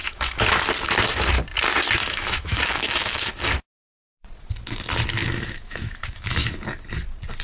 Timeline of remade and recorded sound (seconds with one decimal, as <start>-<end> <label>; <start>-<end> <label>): 0.0-0.5 remade; 0.5-2.0 recorded; 2.0-3.3 remade; 3.3-5.2 recorded; 5.2-6.5 remade; 6.5-7.4 recorded